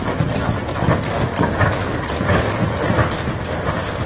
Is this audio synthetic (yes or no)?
no